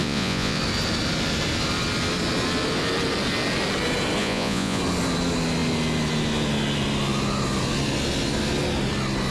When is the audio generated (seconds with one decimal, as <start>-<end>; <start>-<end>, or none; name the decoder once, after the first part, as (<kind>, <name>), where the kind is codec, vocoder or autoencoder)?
0.0-0.6 (vocoder, Vocos); 4.2-4.8